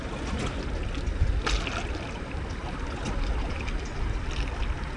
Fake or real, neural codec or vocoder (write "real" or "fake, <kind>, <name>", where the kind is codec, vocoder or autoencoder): real